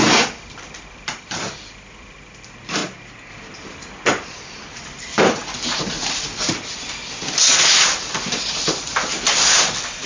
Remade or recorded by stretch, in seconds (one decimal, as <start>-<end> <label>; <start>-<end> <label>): 0.0-2.8 remade; 2.8-3.3 recorded; 3.3-5.4 remade; 5.4-6.2 recorded; 6.2-10.1 remade

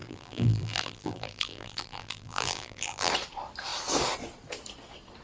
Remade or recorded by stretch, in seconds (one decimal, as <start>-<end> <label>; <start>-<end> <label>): 0.0-3.1 remade; 3.1-5.2 recorded

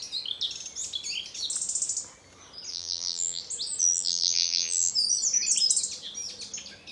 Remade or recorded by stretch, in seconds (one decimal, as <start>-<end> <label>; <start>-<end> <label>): 0.0-2.7 recorded; 2.7-3.4 remade; 3.4-3.8 recorded; 3.8-4.9 remade; 4.9-6.9 recorded

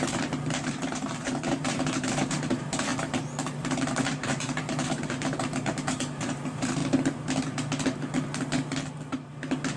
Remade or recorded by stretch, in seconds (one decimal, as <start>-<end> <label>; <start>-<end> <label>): 0.0-2.9 remade; 2.9-3.6 recorded; 3.6-6.8 remade; 6.8-9.8 recorded

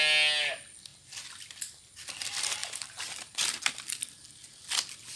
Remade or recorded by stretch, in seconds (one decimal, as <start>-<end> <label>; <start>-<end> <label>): 0.0-2.6 recorded; 2.6-3.3 remade; 3.3-5.2 recorded